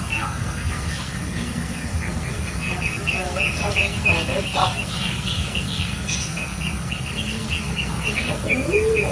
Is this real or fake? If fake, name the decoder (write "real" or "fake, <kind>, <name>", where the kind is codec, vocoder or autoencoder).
fake, codec, SNAC